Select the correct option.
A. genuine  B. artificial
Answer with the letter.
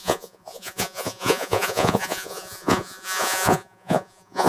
B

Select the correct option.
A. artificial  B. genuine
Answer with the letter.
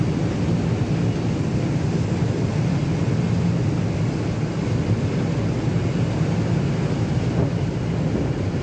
B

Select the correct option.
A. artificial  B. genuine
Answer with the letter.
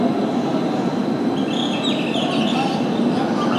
B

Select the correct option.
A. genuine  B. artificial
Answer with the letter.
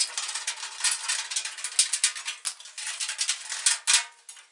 A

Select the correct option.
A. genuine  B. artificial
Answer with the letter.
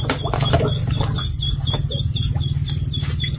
A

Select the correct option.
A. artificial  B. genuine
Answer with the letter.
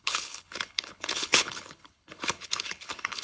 A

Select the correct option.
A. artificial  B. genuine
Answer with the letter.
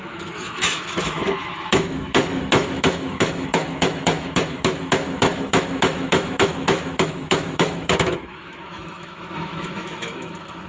A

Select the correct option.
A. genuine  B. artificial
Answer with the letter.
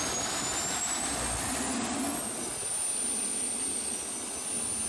A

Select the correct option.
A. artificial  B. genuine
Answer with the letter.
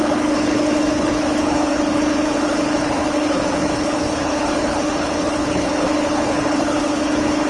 A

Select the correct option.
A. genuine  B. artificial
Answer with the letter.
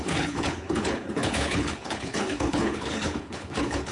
B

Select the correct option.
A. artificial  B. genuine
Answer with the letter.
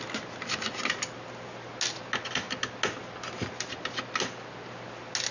B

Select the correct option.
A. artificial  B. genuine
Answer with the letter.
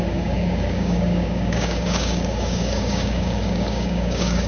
A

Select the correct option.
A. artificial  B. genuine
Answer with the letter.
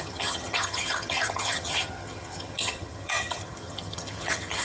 A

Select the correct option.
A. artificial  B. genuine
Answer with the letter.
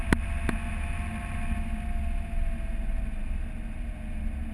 B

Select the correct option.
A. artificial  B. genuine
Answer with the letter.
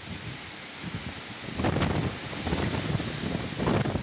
B